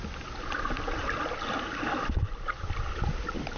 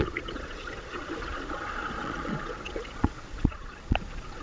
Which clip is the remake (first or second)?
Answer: second